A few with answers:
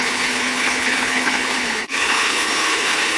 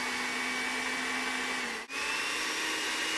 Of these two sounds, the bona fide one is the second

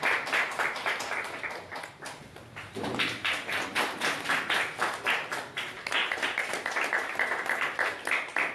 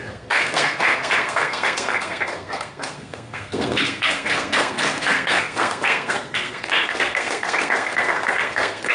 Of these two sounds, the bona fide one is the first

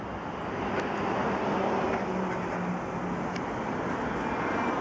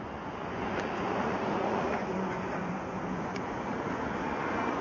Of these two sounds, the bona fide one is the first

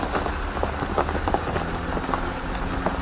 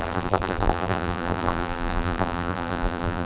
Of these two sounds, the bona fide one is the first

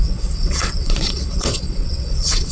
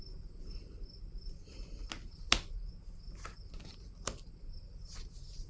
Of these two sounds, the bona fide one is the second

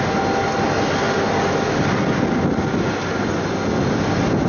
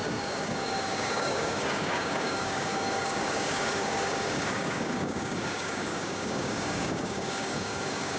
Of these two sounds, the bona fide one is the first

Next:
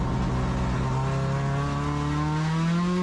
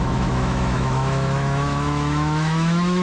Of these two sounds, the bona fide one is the first